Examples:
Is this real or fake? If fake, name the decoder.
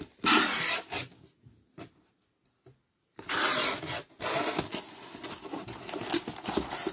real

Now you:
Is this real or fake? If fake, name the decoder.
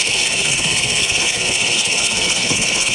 fake, codec, SNAC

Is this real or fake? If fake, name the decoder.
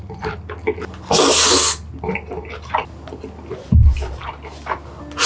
real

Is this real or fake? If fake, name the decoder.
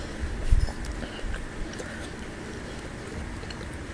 real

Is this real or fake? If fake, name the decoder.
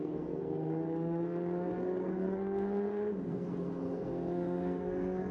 fake, codec, SNAC